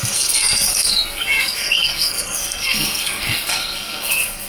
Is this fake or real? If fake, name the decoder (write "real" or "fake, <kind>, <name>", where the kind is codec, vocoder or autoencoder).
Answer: fake, codec, SNAC